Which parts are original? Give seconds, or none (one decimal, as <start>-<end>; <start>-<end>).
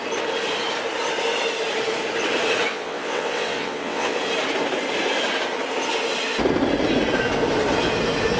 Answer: 0.0-2.7; 4.2-8.4